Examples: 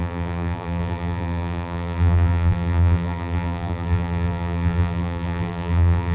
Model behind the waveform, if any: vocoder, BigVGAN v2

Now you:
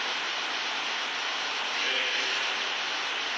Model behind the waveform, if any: none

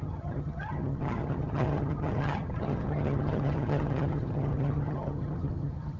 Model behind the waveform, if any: vocoder, HiFi-GAN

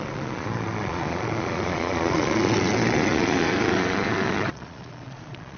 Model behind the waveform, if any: vocoder, Vocos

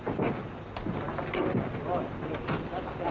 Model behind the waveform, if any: none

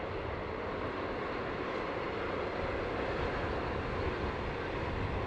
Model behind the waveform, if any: none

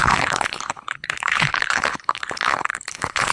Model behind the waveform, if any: codec, HILCodec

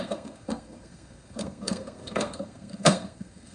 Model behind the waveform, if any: codec, SNAC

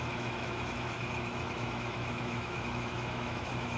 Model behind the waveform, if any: autoencoder, DAC-VAE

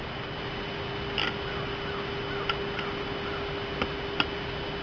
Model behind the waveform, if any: none